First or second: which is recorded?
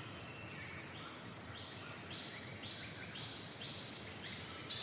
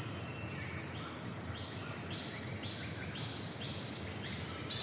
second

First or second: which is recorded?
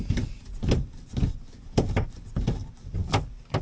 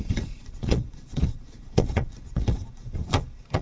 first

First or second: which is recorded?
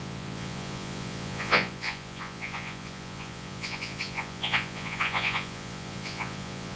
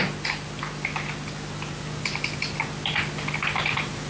second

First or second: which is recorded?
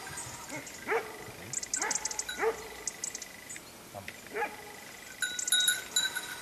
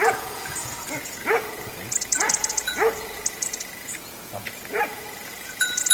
first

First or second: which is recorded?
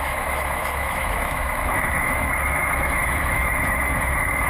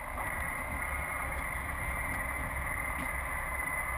second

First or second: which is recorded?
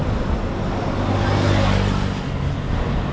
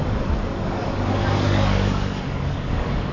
first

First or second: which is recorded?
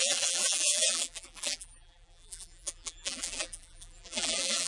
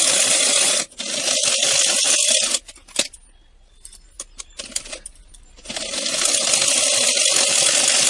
second